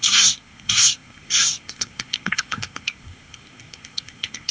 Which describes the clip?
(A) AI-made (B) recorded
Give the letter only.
A